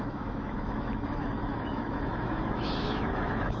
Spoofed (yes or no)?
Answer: yes